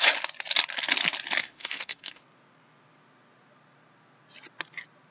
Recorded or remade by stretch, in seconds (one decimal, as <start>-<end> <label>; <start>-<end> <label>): 0.0-1.4 recorded; 1.4-2.2 remade; 2.2-5.1 recorded

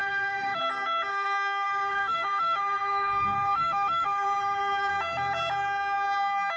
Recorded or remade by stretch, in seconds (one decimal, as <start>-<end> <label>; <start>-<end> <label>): 0.0-0.6 remade; 0.6-1.1 recorded; 1.1-4.9 remade; 4.9-6.6 recorded